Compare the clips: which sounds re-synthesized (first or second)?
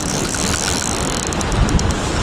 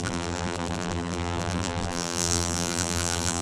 second